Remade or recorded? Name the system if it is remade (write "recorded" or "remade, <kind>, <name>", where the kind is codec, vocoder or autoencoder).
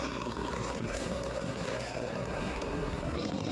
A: remade, codec, SNAC